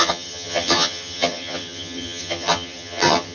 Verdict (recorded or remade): remade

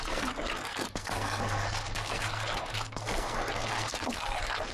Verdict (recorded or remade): remade